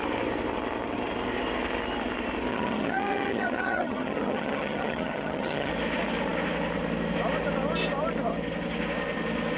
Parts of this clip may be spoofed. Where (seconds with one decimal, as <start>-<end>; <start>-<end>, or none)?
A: 2.5-5.7